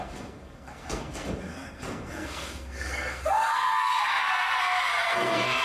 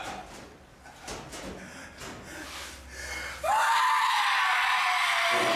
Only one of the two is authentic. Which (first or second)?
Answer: second